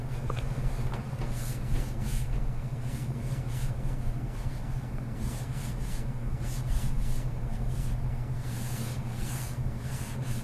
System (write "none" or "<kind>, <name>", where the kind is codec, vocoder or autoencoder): codec, SNAC